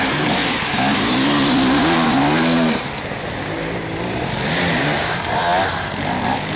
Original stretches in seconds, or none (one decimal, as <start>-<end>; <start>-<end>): 0.0-6.6

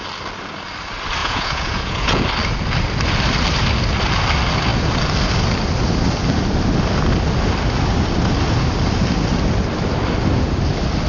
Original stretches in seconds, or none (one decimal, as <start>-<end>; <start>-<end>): 0.0-1.2; 2.2-11.1

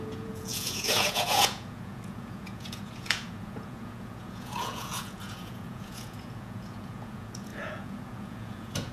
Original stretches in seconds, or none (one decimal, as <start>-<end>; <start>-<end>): none

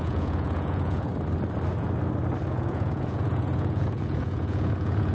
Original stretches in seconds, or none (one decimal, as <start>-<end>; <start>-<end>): 1.1-2.5

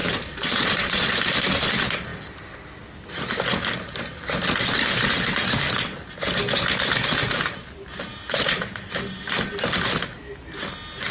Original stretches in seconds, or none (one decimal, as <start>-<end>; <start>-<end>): 1.1-8.2; 8.9-11.1

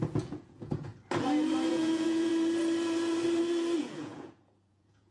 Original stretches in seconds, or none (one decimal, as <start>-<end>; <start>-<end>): 0.9-1.7; 2.3-3.8

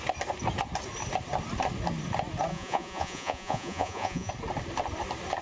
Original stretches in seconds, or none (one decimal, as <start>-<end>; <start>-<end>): 0.0-2.5; 4.3-5.4